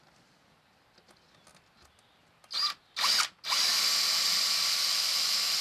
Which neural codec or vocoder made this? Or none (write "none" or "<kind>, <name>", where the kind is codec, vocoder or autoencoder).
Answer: none